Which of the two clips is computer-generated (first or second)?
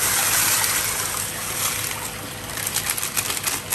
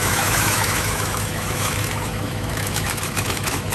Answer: second